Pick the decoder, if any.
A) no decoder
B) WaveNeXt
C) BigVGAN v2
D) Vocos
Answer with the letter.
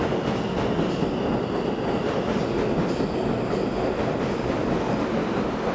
A